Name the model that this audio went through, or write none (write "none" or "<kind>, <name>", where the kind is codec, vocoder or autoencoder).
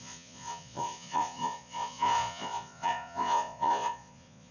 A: vocoder, Vocos